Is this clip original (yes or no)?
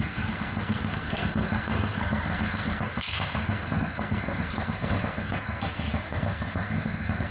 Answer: no